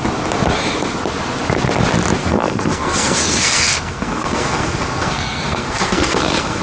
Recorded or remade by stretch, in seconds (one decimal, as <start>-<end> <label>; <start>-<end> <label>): 0.0-2.2 recorded; 2.2-6.6 remade